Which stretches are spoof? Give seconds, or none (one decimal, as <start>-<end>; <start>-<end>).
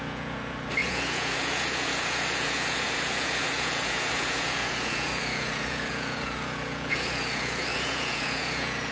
0.0-8.9